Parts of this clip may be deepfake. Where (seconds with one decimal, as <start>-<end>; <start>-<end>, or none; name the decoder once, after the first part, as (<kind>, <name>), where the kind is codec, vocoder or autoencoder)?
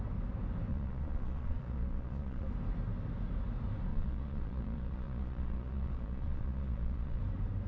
0.7-2.5 (vocoder, Vocos); 3.9-7.2